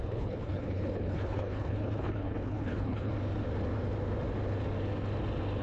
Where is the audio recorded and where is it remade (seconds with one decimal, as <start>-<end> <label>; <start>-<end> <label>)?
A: 0.0-3.1 remade; 3.1-5.6 recorded